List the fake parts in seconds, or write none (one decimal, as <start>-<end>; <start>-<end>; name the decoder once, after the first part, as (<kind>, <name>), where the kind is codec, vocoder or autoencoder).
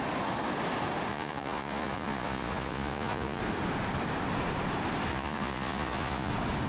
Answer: 1.1-3.4 (vocoder, Vocos); 5.1-6.3